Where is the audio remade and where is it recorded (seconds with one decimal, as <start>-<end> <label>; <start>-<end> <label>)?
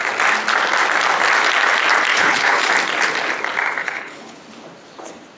0.0-2.1 recorded; 2.1-2.7 remade; 2.7-3.8 recorded; 3.8-4.4 remade; 4.4-5.4 recorded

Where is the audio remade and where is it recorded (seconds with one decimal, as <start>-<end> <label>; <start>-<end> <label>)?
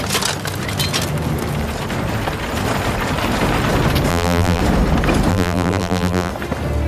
0.0-4.1 recorded; 4.1-4.6 remade; 4.6-5.3 recorded; 5.3-6.3 remade; 6.3-6.9 recorded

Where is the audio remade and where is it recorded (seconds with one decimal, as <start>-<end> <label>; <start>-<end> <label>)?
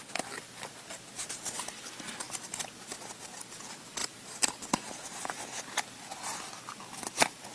0.0-4.0 recorded; 4.0-5.6 remade; 5.6-7.5 recorded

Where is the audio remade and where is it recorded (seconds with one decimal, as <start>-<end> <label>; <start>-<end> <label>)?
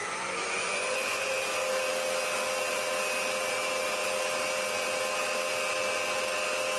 0.0-1.3 remade; 1.3-6.8 recorded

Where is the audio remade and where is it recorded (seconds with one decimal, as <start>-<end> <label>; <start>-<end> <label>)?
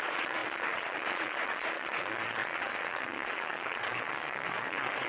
0.0-5.1 remade